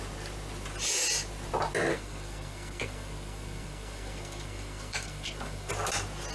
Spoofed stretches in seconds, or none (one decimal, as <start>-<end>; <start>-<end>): 1.9-5.7